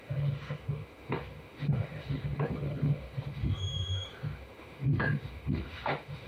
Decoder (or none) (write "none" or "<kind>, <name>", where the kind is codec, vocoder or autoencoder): autoencoder, DAC-VAE